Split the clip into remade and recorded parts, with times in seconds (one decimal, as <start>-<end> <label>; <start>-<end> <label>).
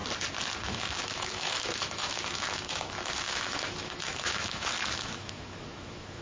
0.0-0.6 recorded; 0.6-6.2 remade